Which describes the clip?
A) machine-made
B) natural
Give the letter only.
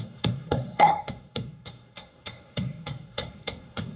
A